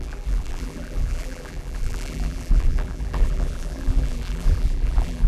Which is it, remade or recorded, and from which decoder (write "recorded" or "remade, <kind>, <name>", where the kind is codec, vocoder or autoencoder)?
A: remade, vocoder, BigVGAN v2